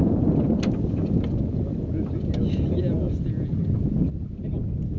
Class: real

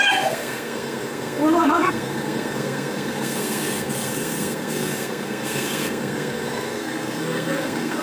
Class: fake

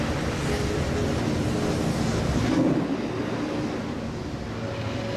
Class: real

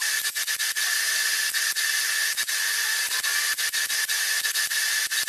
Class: real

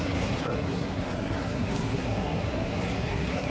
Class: fake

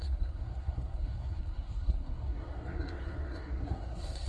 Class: fake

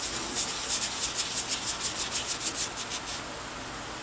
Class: real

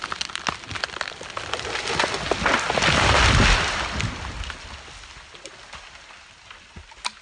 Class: real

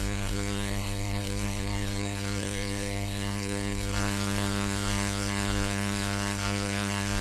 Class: fake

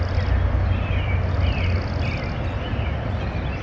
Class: real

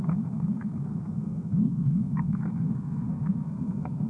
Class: fake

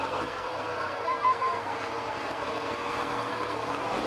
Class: fake